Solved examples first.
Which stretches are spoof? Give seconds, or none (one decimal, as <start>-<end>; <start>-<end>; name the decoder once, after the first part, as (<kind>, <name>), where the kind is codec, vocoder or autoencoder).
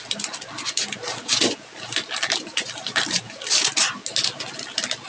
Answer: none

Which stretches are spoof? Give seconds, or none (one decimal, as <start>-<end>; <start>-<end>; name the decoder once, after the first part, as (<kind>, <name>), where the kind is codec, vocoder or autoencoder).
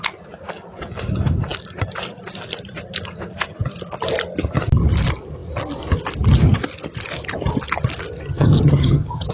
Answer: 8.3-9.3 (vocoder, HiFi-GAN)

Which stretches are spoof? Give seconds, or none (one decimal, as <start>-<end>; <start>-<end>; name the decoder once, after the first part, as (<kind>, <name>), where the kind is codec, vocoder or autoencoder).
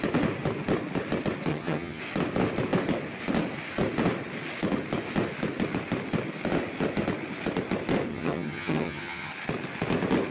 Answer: 1.5-2.0 (vocoder, HiFi-GAN); 8.1-9.3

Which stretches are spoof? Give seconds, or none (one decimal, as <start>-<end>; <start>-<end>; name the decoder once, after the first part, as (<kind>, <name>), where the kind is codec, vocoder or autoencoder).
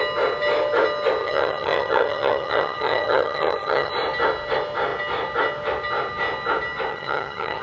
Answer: 1.2-3.9 (vocoder, HiFi-GAN); 6.9-7.6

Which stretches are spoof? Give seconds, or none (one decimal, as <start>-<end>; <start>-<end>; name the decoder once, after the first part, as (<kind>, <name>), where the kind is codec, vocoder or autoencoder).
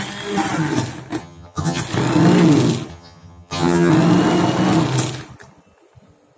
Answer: 1.2-1.8 (vocoder, HiFi-GAN); 2.9-3.9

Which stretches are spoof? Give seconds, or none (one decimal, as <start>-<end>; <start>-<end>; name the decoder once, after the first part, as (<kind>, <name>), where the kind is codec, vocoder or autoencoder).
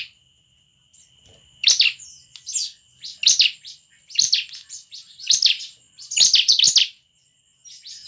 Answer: none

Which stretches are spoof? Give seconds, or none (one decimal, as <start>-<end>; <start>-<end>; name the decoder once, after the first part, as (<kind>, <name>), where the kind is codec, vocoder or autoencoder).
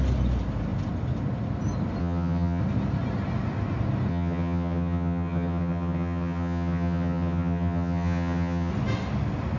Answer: 2.0-2.6 (vocoder, HiFi-GAN); 4.1-8.7